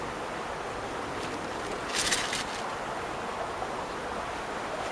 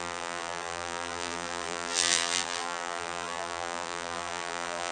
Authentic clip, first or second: first